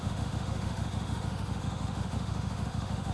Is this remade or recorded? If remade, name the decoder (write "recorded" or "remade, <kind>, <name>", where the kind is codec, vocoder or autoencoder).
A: remade, autoencoder, DAC-VAE